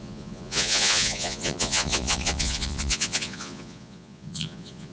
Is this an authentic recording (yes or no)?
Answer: no